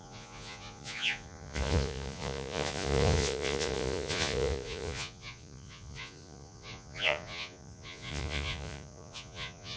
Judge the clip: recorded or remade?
remade